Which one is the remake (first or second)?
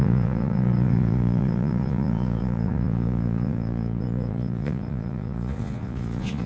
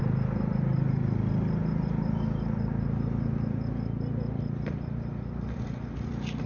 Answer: first